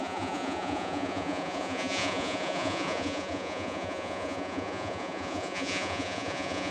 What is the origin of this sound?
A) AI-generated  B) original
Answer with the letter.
A